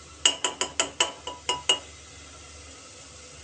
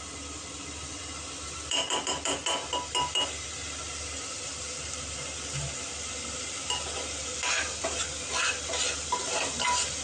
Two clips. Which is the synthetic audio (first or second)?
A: second